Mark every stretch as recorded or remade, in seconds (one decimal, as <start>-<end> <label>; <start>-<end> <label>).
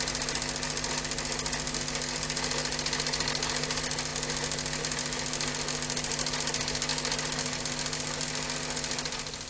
0.0-9.5 recorded